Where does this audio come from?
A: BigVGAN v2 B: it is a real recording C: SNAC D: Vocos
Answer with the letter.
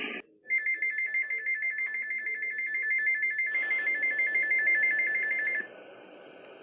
B